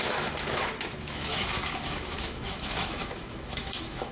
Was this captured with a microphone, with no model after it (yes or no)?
no